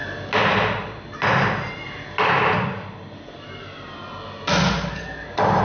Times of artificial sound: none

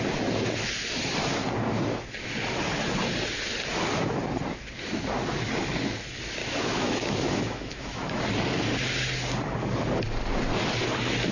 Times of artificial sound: 6.4-8.2

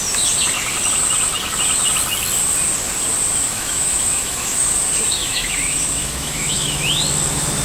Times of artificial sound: 3.5-4.8; 5.2-6.9

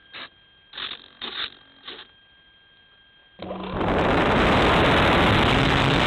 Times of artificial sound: none

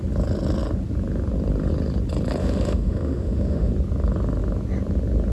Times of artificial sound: 2.4-3.7

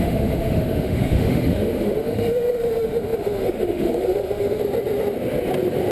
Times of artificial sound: 0.0-4.6

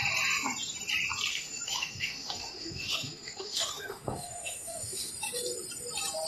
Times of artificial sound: 1.3-5.1

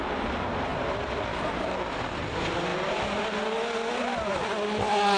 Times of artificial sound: none